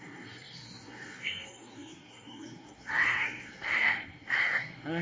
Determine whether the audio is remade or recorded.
remade